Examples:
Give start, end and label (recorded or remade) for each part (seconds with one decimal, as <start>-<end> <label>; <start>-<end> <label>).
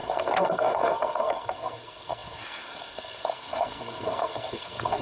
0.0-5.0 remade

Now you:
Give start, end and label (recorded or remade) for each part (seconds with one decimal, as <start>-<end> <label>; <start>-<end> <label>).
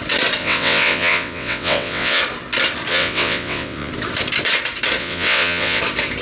0.0-0.4 recorded; 0.4-2.2 remade; 2.2-2.9 recorded; 2.9-3.9 remade; 3.9-5.0 recorded; 5.0-5.8 remade; 5.8-6.2 recorded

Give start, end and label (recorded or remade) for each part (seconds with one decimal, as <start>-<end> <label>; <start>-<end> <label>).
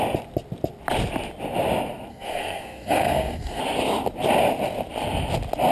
0.0-2.1 recorded; 2.1-3.6 remade; 3.6-5.7 recorded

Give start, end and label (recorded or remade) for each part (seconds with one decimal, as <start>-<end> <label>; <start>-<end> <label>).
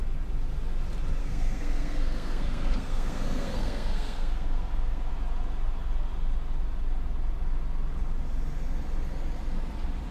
0.0-1.2 recorded; 1.2-5.1 remade; 5.1-10.1 recorded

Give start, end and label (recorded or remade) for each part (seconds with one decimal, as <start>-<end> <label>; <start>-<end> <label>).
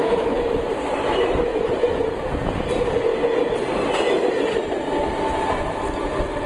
0.0-1.5 recorded; 1.5-2.2 remade; 2.2-6.5 recorded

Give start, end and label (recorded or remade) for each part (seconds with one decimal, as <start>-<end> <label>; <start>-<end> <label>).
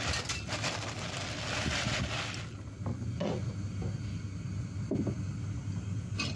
0.0-2.9 recorded; 2.9-3.5 remade; 3.5-6.4 recorded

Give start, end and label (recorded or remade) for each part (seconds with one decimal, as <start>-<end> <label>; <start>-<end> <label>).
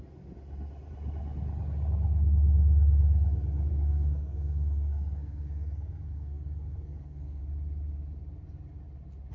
0.0-3.7 recorded; 3.7-7.4 remade; 7.4-9.3 recorded